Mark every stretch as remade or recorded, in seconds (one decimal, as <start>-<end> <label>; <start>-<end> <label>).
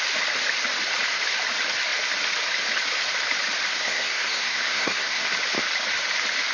0.0-3.7 recorded; 3.7-5.2 remade; 5.2-6.5 recorded